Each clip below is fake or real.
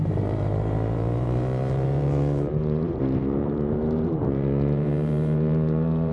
fake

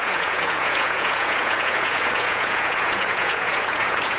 fake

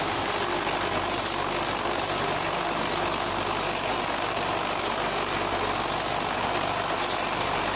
real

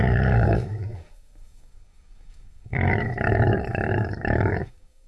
fake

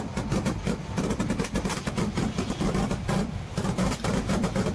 fake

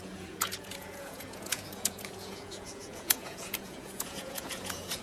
fake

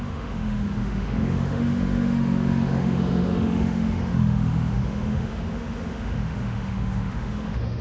fake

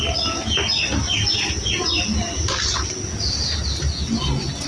real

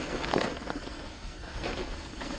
fake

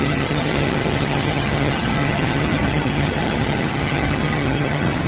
fake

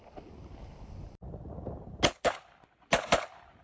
real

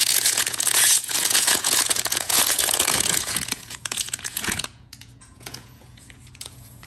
fake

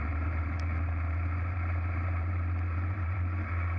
fake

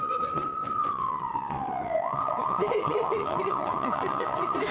fake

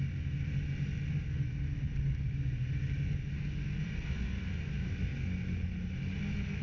real